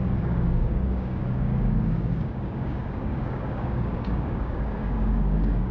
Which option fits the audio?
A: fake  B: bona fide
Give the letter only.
A